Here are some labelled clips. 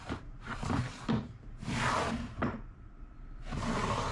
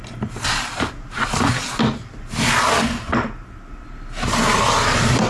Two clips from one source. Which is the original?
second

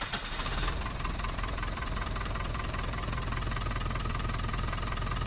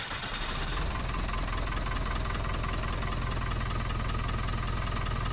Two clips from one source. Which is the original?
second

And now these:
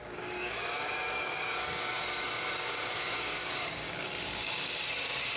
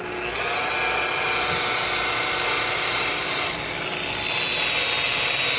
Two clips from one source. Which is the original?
second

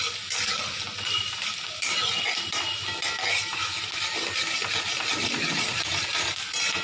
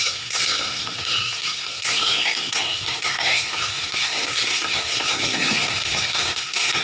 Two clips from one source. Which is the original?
first